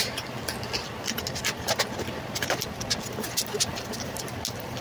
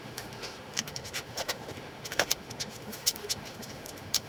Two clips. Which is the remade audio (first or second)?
second